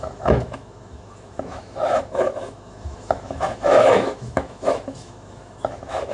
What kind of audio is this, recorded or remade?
remade